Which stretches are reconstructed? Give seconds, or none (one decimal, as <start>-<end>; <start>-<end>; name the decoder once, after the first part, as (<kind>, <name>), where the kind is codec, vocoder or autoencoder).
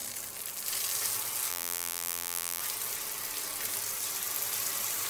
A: 1.5-2.6 (vocoder, BigVGAN v2)